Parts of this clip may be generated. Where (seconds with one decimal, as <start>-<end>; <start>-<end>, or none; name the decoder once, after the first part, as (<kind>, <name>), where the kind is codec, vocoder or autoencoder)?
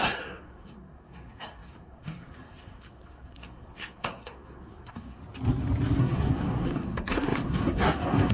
0.0-5.2 (codec, SNAC); 6.0-8.3